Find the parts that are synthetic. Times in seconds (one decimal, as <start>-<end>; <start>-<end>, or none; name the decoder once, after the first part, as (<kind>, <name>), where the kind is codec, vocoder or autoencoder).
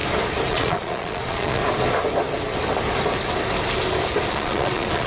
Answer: 0.5-1.6 (vocoder, Vocos); 4.3-5.1